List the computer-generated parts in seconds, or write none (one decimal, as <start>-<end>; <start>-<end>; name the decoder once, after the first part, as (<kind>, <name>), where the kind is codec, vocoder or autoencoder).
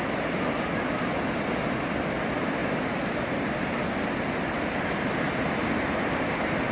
none